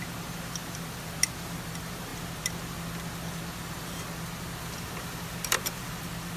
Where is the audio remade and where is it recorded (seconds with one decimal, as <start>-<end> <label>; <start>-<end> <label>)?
0.0-6.4 recorded